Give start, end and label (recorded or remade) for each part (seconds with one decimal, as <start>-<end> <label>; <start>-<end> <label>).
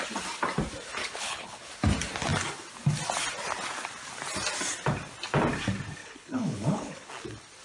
0.0-1.0 recorded; 1.0-1.7 remade; 1.7-6.0 recorded; 6.0-7.1 remade; 7.1-7.6 recorded